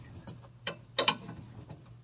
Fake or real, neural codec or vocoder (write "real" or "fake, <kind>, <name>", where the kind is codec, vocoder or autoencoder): real